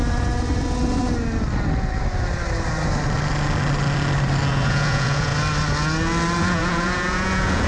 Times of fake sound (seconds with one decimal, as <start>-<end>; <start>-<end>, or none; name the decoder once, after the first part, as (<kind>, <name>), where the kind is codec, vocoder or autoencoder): 4.5-5.3 (vocoder, Vocos); 6.4-7.7